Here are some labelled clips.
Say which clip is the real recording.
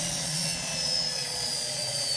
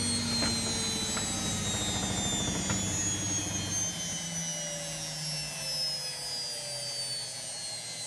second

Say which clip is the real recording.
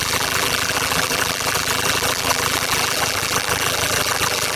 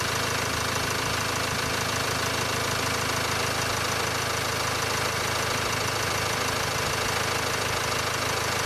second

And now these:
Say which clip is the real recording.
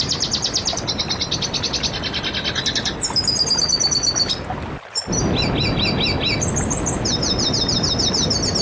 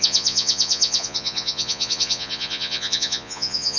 first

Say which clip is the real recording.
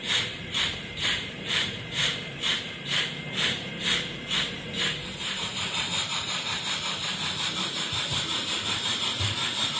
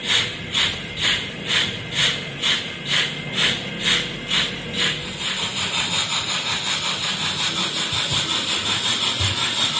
second